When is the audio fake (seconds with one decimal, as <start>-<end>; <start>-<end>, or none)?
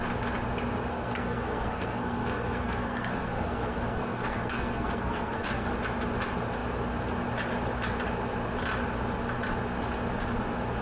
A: 0.9-5.7